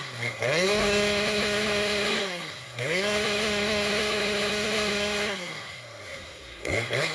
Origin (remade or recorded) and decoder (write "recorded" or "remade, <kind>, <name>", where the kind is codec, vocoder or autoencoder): remade, codec, SNAC